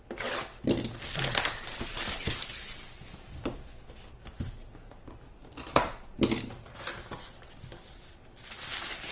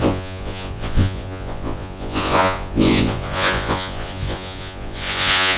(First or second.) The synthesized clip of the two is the second